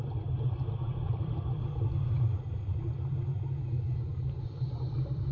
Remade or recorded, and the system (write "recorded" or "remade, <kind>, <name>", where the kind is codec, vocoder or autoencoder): remade, vocoder, BigVGAN v2